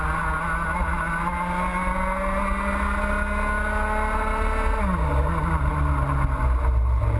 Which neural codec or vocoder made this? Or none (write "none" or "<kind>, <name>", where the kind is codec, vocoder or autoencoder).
none